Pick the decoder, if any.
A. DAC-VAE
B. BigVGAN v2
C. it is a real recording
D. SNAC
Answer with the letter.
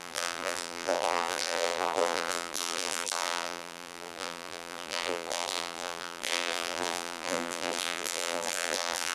B